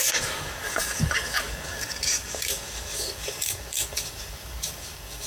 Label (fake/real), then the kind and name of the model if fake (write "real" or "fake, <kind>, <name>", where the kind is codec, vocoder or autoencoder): fake, codec, DAC